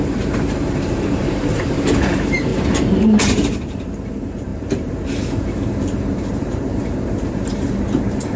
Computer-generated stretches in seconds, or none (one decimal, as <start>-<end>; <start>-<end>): 0.0-2.5; 3.2-8.4